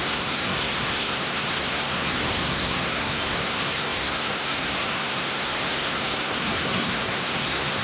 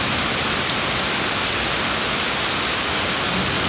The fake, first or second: first